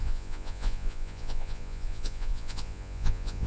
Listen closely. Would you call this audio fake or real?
fake